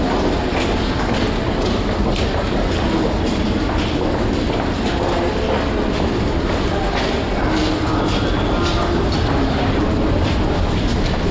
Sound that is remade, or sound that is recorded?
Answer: recorded